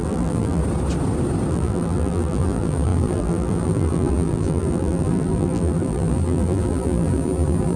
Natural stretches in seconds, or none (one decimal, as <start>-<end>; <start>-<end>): 0.6-1.5